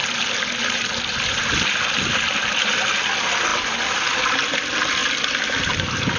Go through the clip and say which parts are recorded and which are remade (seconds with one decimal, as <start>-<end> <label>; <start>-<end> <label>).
0.0-1.5 remade; 1.5-3.5 recorded; 3.5-4.6 remade; 4.6-5.0 recorded; 5.0-6.2 remade